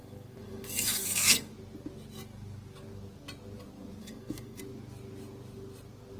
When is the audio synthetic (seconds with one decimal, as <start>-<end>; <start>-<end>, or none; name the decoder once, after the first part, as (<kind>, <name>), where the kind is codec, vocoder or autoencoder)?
0.0-1.5 (codec, SNAC); 4.0-4.6